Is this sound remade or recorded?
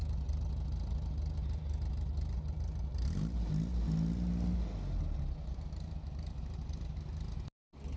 recorded